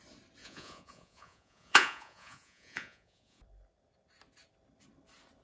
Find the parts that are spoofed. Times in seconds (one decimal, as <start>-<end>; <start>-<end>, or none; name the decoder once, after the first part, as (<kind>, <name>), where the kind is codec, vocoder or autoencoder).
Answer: 0.4-3.4 (vocoder, Vocos)

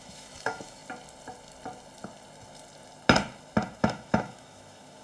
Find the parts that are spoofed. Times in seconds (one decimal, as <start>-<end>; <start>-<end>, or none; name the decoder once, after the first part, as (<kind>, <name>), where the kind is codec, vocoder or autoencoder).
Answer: 0.0-0.8 (autoencoder, DAC-VAE); 3.8-5.0